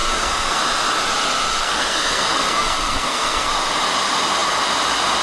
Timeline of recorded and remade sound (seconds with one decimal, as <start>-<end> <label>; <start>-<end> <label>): 0.0-0.6 remade; 0.6-1.5 recorded; 1.5-3.5 remade; 3.5-5.2 recorded